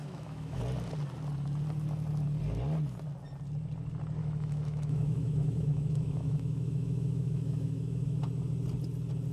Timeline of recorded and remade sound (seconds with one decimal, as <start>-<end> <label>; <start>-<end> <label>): 0.0-0.6 remade; 0.6-4.2 recorded; 4.2-8.2 remade; 8.2-9.3 recorded